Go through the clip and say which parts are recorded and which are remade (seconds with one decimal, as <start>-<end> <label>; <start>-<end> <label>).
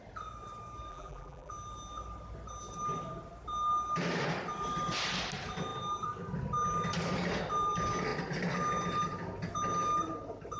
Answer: 0.0-0.9 recorded; 0.9-1.5 remade; 1.5-10.6 recorded